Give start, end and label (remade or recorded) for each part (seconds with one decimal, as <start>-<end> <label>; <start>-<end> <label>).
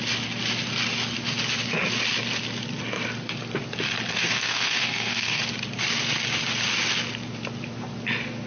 0.0-4.1 recorded; 4.1-5.4 remade; 5.4-8.5 recorded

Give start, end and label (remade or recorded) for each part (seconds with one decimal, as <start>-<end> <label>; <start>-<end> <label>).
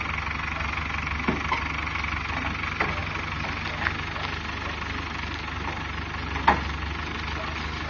0.0-7.9 recorded